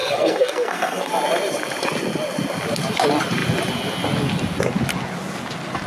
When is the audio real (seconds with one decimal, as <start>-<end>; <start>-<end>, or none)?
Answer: 1.1-5.9